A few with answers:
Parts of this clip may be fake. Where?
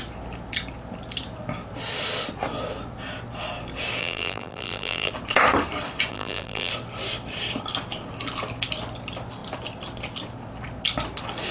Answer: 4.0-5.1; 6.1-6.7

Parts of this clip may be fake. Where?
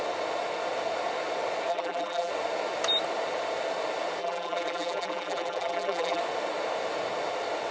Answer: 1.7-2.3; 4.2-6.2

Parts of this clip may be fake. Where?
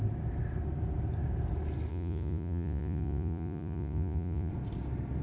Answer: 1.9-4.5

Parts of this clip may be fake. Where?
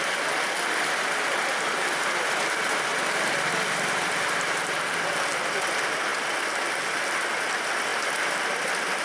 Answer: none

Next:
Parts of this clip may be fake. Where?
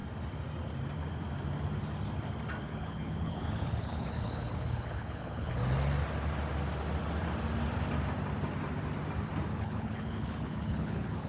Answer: 2.6-5.6; 9.5-11.3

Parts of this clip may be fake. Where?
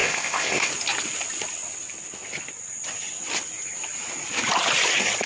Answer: 0.0-0.7